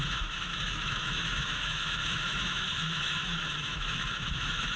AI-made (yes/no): yes